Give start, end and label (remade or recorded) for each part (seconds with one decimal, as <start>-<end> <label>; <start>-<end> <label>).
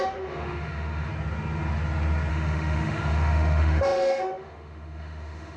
0.0-1.1 remade; 1.1-2.3 recorded; 2.3-5.6 remade